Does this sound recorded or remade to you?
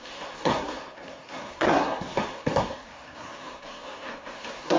remade